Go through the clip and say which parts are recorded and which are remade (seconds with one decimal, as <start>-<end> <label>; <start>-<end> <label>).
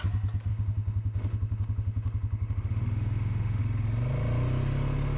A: 0.0-0.5 recorded; 0.5-3.6 remade; 3.6-5.2 recorded